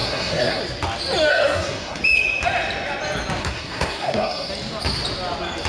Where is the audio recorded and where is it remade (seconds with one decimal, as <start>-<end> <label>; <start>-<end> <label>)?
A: 0.0-0.6 remade; 0.6-1.3 recorded; 1.3-2.0 remade; 2.0-3.4 recorded; 3.4-4.5 remade; 4.5-5.7 recorded